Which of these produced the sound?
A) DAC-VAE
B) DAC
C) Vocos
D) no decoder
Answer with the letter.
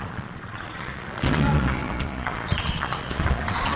C